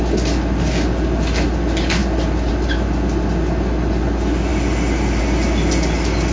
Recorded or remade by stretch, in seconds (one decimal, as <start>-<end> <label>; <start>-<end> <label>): 0.0-6.3 recorded